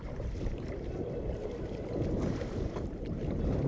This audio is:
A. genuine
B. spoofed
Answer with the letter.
B